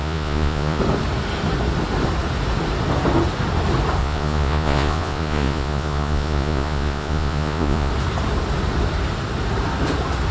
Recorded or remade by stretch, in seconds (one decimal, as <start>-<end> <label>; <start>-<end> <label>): 0.0-0.8 remade; 0.8-4.0 recorded; 4.0-7.9 remade; 7.9-10.3 recorded